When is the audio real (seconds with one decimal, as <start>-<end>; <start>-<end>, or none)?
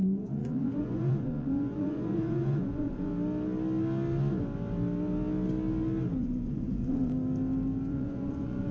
3.1-6.2; 7.1-7.9